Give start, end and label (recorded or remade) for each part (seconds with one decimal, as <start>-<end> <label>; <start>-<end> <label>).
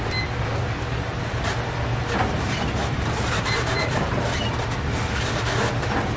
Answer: 0.0-2.8 recorded; 2.8-4.4 remade; 4.4-6.2 recorded